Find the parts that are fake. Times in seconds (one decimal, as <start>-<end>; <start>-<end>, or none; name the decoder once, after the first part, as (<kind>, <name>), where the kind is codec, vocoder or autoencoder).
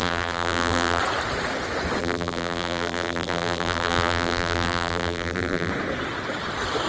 0.0-1.0 (vocoder, BigVGAN v2); 2.0-5.7